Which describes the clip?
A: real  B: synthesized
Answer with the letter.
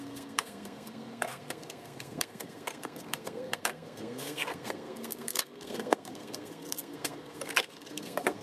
B